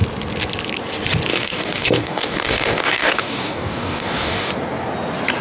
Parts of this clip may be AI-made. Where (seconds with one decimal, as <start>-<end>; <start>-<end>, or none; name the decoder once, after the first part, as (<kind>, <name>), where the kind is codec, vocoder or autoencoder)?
1.3-4.5 (codec, DAC)